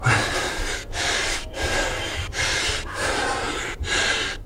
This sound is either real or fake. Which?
fake